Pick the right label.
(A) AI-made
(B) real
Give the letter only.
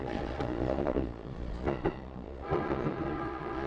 A